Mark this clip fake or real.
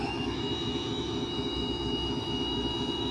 fake